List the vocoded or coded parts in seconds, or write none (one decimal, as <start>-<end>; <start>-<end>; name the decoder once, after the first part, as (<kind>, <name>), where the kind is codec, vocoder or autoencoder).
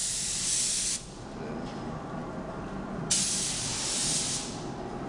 0.0-0.5 (vocoder, BigVGAN v2)